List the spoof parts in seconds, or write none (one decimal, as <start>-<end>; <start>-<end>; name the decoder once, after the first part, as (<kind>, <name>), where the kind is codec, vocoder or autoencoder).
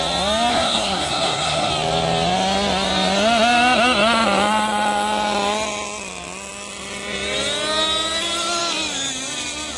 0.5-1.7 (codec, SNAC)